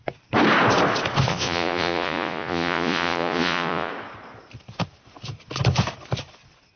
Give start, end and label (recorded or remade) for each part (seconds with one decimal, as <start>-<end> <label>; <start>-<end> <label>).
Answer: 0.0-1.3 recorded; 1.3-3.9 remade; 3.9-6.8 recorded